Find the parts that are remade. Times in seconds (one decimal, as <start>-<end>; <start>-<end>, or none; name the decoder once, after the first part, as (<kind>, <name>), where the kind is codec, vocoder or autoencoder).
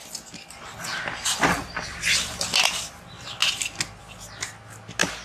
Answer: none